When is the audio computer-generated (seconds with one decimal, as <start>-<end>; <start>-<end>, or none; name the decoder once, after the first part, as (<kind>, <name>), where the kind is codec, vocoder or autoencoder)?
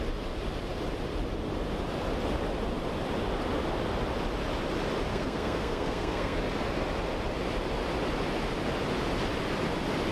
5.1-6.4 (codec, SNAC)